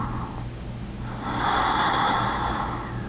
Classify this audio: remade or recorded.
recorded